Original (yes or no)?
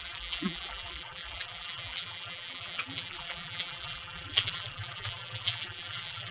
no